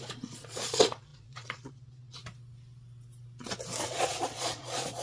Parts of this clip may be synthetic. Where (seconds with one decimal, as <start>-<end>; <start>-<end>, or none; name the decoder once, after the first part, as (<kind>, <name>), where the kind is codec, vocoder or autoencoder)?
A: 0.0-2.2 (vocoder, Vocos); 3.9-5.0